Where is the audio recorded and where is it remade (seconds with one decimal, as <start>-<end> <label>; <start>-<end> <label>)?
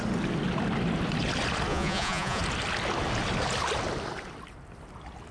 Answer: 0.0-1.7 recorded; 1.7-2.4 remade; 2.4-5.3 recorded